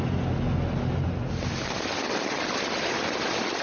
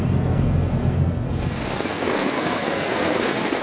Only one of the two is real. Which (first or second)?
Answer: first